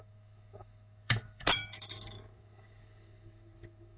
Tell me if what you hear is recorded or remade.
remade